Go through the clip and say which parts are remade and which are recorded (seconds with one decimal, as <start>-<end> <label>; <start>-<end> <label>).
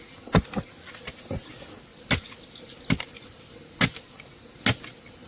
0.0-5.3 recorded